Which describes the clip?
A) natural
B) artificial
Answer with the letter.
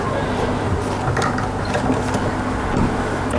A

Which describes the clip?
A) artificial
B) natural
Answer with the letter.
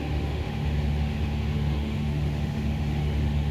A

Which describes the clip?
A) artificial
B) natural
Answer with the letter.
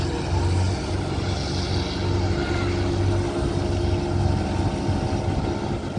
B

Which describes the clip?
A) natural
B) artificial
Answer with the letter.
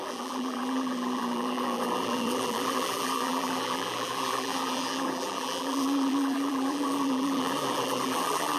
B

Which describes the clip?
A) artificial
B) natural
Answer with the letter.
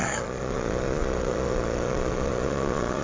A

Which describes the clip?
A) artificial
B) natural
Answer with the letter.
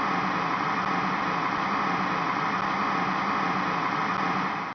B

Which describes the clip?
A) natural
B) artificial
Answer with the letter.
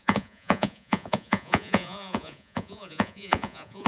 B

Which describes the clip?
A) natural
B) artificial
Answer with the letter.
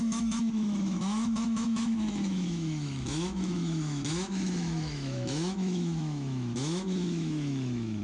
B